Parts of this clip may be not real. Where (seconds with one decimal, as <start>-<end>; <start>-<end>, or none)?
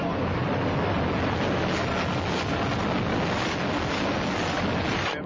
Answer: none